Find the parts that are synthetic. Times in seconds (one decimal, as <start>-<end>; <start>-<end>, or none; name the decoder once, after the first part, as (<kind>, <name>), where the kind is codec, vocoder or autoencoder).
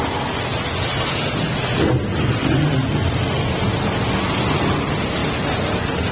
none